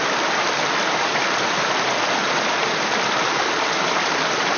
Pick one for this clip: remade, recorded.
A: recorded